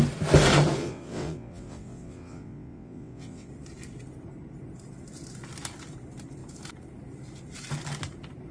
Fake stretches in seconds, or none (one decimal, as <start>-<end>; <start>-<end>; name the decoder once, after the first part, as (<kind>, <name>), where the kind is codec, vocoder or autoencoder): 0.8-3.5 (vocoder, WaveNeXt)